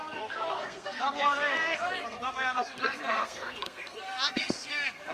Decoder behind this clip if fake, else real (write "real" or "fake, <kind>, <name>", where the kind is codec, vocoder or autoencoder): fake, codec, SNAC